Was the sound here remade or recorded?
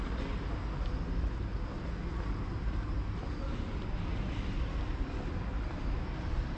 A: recorded